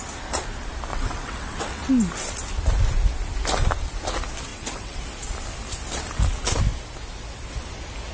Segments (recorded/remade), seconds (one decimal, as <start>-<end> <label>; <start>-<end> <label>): 0.0-0.9 recorded; 0.9-1.9 remade; 1.9-4.5 recorded; 4.5-5.0 remade; 5.0-8.1 recorded